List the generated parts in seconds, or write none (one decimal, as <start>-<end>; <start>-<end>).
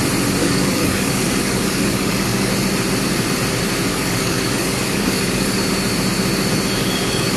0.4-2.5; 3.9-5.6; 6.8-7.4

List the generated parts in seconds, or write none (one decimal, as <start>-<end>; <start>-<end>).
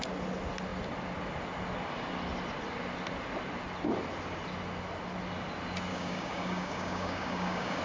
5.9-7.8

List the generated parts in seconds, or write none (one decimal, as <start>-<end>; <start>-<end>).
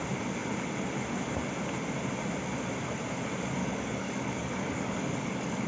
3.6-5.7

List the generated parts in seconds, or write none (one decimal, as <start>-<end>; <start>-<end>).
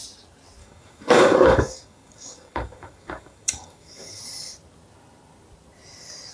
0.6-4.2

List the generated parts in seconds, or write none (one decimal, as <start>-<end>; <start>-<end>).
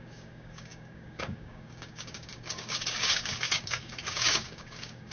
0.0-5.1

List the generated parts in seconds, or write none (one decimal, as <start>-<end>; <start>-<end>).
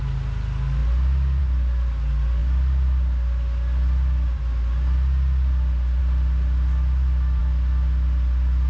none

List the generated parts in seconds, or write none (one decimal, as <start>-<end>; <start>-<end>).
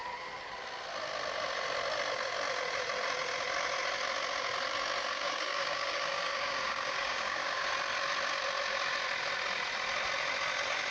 5.1-7.7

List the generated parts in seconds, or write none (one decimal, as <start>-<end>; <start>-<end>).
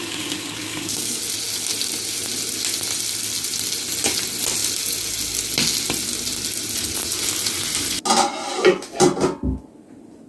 0.0-1.2